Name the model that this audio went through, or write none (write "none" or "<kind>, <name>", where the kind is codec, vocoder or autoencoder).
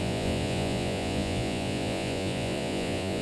vocoder, Vocos